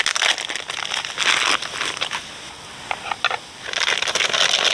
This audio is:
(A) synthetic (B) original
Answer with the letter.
B